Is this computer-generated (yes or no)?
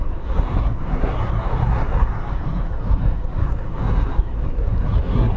yes